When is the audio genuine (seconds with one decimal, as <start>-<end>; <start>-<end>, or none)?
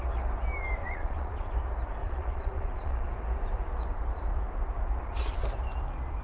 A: 0.0-0.8; 1.5-2.0; 3.1-6.2